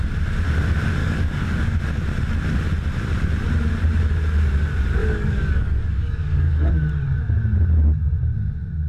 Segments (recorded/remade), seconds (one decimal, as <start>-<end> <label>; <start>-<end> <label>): 0.0-1.0 recorded; 1.0-1.8 remade; 1.8-5.0 recorded; 5.0-6.7 remade; 6.7-8.9 recorded